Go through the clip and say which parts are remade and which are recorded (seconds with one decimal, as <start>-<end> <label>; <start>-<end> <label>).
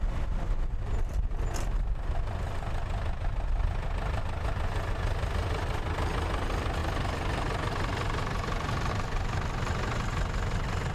0.0-10.9 recorded